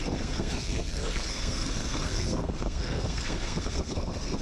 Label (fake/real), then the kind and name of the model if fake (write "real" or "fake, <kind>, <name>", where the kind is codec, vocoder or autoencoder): fake, codec, SNAC